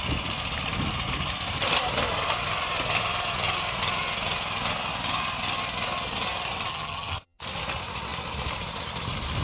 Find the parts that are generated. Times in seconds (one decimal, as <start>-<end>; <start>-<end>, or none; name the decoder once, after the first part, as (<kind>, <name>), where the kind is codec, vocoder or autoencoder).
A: 6.7-7.4 (vocoder, HiFi-GAN)